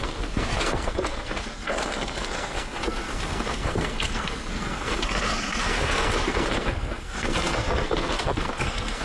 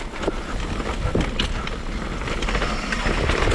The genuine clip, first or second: second